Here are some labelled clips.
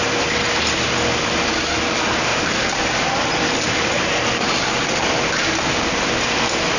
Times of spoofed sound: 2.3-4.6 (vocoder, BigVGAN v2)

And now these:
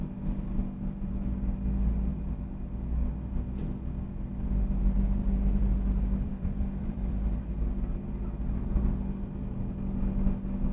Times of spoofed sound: 5.2-7.5 (vocoder, BigVGAN v2)

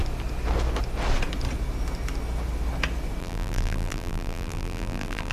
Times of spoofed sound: 3.2-5.3 (vocoder, BigVGAN v2)

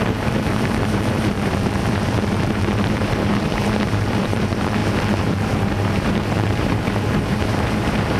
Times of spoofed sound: 0.0-8.2 (vocoder, BigVGAN v2)

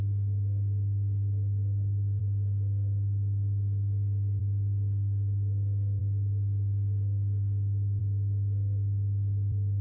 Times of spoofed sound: none

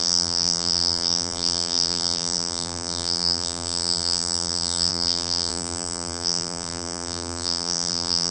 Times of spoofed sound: 0.0-8.3 (vocoder, BigVGAN v2)

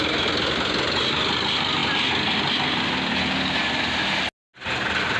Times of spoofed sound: none

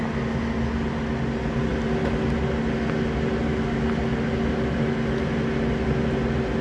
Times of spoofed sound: none